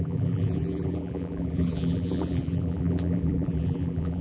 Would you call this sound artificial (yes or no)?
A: yes